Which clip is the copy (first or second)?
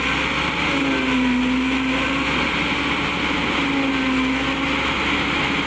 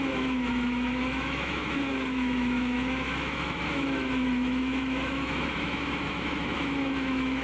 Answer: second